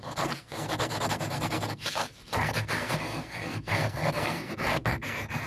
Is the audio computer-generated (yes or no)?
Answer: yes